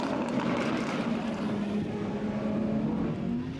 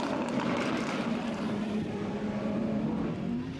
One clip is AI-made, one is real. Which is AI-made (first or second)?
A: second